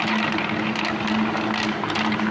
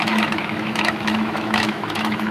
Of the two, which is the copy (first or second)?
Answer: second